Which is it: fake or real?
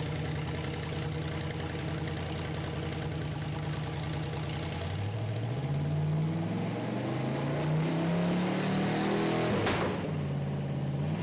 real